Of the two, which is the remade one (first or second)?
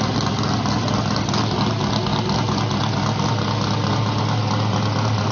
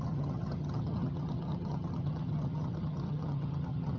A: second